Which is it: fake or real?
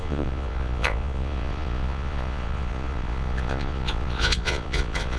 fake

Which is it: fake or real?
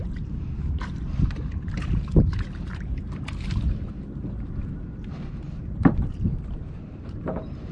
fake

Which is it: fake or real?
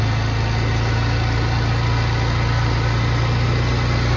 real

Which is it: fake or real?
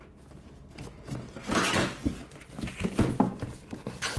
real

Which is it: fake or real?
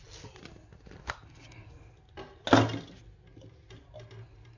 real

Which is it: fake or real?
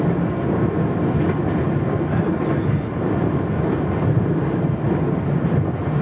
real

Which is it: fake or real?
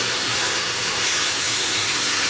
fake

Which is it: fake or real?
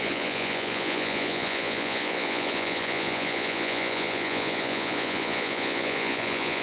fake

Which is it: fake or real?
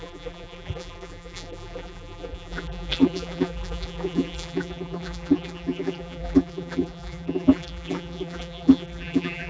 fake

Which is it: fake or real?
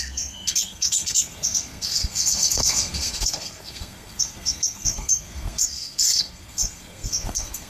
fake